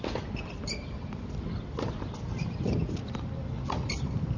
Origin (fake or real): real